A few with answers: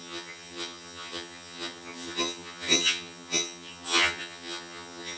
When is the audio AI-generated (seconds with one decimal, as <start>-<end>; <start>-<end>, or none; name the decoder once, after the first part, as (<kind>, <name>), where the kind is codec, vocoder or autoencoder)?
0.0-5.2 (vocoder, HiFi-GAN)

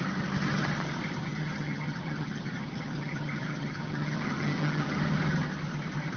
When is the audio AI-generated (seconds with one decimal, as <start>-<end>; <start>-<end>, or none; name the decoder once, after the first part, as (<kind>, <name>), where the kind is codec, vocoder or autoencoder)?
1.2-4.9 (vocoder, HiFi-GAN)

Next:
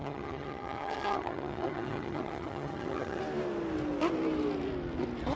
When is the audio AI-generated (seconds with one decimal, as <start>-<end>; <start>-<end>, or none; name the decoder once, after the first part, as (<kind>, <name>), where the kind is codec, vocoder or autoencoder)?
0.0-3.2 (vocoder, HiFi-GAN)

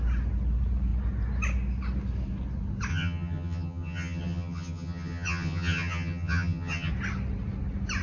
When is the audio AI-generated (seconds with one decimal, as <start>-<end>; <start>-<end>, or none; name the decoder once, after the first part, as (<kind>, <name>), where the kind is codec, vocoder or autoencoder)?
2.9-6.9 (vocoder, HiFi-GAN)

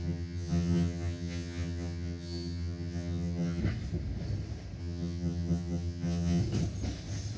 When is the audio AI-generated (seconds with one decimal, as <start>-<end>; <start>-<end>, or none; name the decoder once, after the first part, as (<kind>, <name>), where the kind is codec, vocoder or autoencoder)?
0.0-3.6 (vocoder, HiFi-GAN); 4.8-6.4

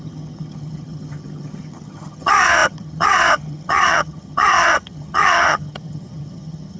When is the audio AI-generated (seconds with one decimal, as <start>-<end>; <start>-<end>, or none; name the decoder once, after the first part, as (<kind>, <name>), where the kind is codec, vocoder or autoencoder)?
0.0-6.8 (vocoder, HiFi-GAN)

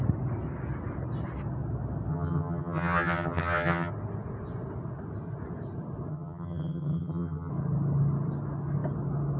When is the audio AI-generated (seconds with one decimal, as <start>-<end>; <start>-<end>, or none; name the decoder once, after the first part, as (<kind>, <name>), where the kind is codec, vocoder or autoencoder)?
2.1-3.9 (vocoder, HiFi-GAN); 6.1-7.5